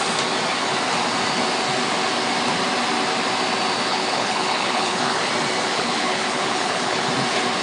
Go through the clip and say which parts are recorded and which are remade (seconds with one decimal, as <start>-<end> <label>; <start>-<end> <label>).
0.0-3.9 recorded; 3.9-5.3 remade; 5.3-5.7 recorded; 5.7-7.1 remade; 7.1-7.6 recorded